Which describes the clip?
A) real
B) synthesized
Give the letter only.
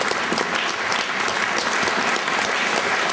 A